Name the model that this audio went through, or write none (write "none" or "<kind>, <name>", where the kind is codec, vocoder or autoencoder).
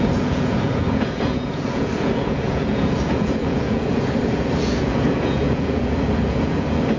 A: vocoder, Vocos